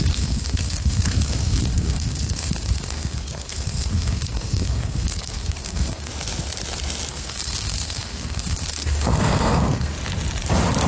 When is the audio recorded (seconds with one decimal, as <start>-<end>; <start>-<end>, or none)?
6.1-7.1; 9.9-10.9